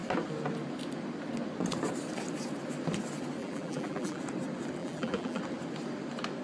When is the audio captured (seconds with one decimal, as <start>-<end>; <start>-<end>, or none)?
0.0-3.4; 4.2-4.8; 5.4-6.4